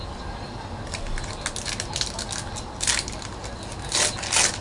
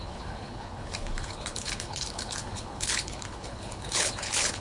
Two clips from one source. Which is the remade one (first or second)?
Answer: second